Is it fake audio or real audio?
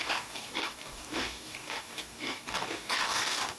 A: fake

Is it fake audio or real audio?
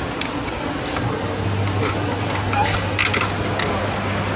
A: real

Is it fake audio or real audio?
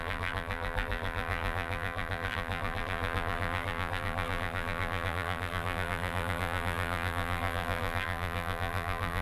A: fake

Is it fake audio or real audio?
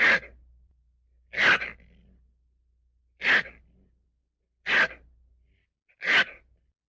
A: real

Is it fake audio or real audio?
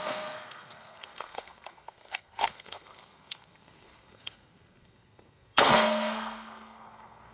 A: fake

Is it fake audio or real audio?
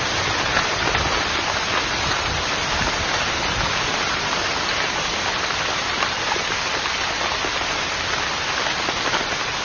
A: real